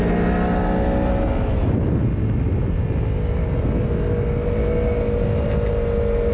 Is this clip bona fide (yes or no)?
yes